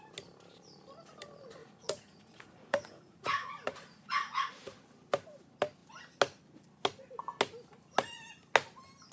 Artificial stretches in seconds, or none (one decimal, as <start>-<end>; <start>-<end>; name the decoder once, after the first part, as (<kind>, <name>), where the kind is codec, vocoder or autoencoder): 1.6-4.5 (vocoder, Vocos)